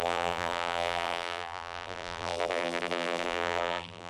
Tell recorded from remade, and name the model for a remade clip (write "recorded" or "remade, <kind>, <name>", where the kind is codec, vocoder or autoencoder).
remade, vocoder, BigVGAN v2